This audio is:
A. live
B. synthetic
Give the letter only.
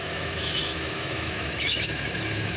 B